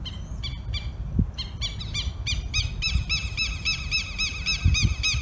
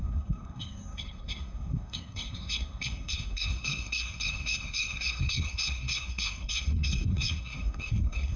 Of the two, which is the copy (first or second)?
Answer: second